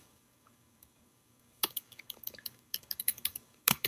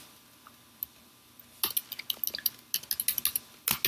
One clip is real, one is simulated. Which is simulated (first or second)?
first